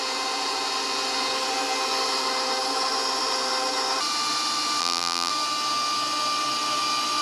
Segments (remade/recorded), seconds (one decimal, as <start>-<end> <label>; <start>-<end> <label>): 0.0-4.8 recorded; 4.8-5.3 remade; 5.3-7.2 recorded